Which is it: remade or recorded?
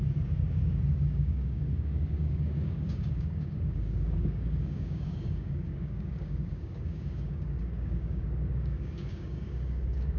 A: remade